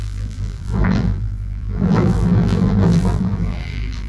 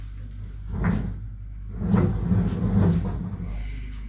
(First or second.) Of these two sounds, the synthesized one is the first